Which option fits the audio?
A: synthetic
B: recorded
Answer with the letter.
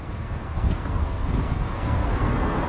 A